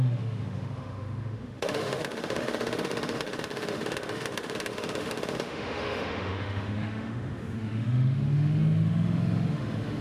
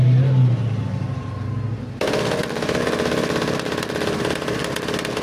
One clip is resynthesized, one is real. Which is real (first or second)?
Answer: second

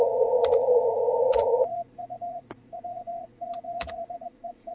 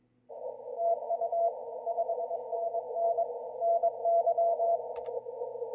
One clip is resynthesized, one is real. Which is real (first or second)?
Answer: second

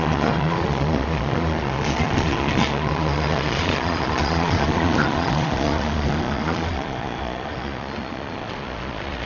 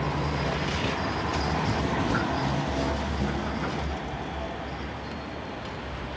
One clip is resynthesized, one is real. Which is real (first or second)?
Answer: second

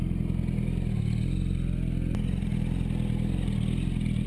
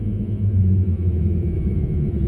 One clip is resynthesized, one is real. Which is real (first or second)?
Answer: first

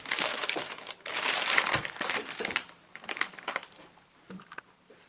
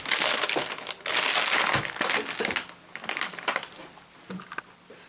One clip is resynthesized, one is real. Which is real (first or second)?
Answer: second